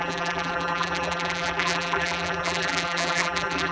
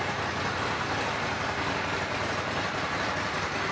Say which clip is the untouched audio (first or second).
second